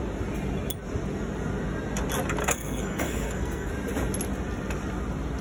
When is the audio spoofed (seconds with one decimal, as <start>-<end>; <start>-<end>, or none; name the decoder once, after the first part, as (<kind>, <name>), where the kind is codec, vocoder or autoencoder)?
2.4-3.7 (codec, SNAC)